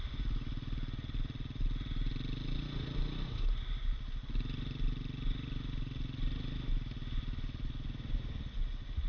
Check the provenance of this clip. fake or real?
real